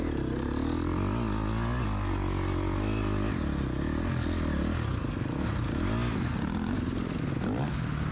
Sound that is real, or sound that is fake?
real